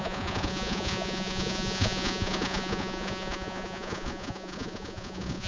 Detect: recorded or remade remade